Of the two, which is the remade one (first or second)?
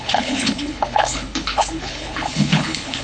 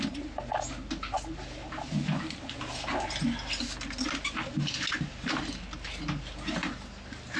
first